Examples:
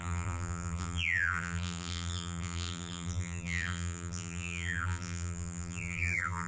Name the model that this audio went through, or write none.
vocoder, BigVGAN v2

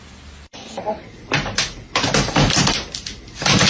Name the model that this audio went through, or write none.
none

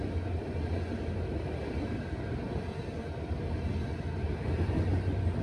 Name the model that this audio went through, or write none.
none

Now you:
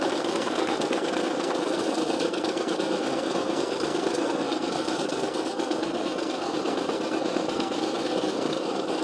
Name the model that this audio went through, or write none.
codec, SNAC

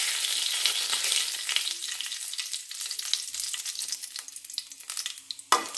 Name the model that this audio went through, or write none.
none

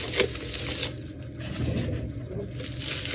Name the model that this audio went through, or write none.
none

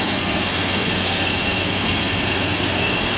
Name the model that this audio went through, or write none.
codec, SNAC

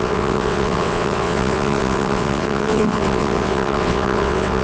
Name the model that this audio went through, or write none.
vocoder, WaveNeXt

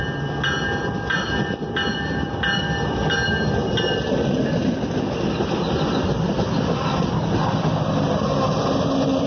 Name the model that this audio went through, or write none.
none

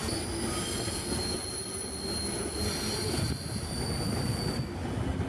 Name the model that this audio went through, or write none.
none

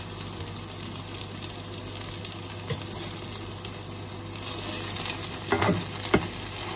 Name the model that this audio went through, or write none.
none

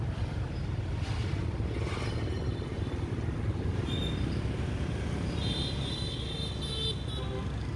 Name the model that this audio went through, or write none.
none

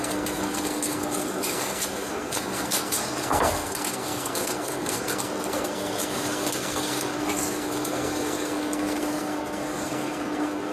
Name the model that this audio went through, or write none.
codec, SNAC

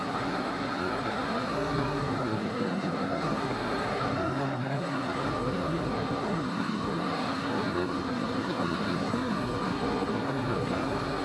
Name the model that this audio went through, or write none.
codec, SNAC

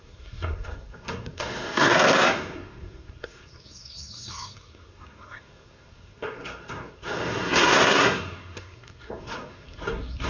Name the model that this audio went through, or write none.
codec, SNAC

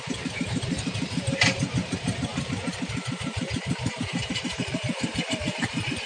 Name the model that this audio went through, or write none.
vocoder, BigVGAN v2